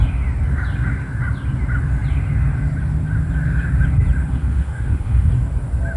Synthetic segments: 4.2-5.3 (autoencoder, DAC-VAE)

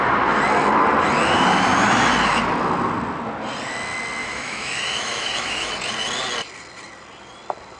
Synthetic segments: 4.2-5.7 (autoencoder, DAC-VAE)

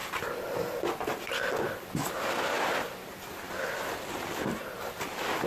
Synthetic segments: none

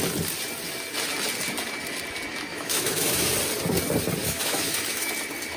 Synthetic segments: 2.5-3.3 (autoencoder, DAC-VAE); 4.2-5.1